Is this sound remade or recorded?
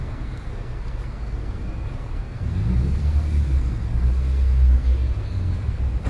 remade